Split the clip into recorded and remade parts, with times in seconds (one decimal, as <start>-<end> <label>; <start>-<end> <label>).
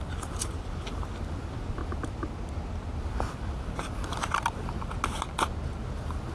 0.0-6.3 recorded